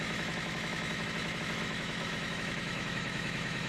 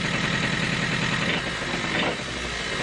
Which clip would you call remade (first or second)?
first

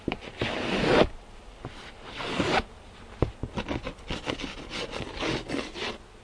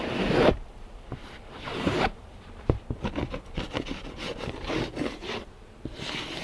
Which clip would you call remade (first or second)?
second